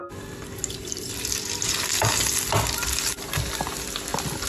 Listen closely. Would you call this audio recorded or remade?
recorded